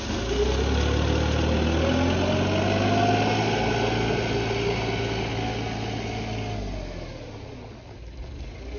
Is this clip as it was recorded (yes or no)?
yes